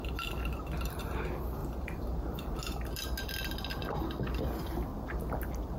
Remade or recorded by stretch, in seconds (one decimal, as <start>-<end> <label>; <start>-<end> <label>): 0.0-1.6 recorded; 1.6-2.6 remade; 2.6-4.9 recorded; 4.9-5.8 remade